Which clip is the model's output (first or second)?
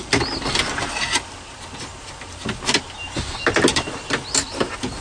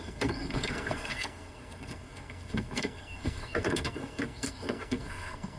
second